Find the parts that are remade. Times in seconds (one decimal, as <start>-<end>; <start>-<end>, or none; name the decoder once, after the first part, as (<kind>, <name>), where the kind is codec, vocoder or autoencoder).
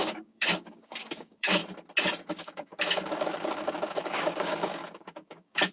0.0-1.6 (codec, DAC); 2.3-5.7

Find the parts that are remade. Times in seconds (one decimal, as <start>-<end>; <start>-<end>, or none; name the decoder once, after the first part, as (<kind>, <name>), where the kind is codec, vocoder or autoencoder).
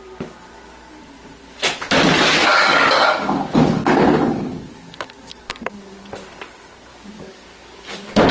2.4-6.1 (codec, DAC); 6.9-8.3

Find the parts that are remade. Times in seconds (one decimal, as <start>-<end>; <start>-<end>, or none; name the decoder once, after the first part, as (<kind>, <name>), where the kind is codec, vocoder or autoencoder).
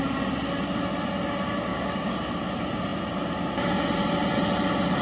1.7-2.3 (codec, DAC)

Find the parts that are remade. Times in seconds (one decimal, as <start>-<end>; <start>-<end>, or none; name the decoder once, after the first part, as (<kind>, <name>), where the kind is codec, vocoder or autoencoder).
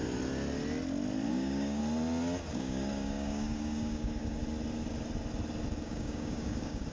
1.3-1.8 (codec, DAC); 2.5-4.4; 5.8-6.9